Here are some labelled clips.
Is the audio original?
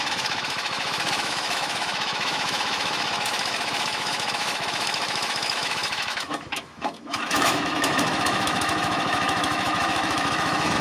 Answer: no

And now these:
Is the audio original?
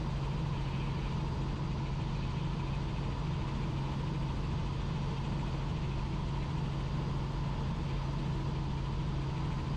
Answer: yes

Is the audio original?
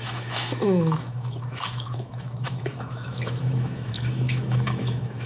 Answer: no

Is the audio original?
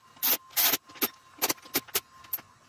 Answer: yes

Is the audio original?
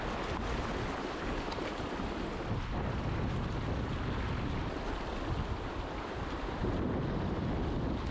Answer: yes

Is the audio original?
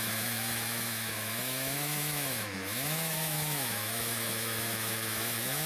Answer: no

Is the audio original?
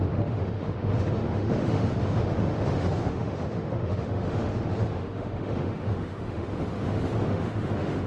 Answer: no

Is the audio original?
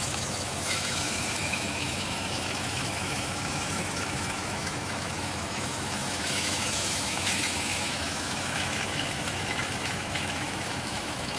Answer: no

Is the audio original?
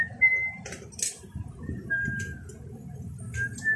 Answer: yes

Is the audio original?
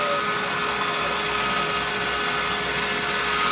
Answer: yes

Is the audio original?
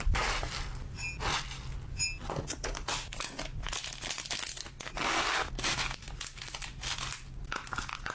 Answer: yes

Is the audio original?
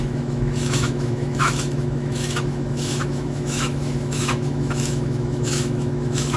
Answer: no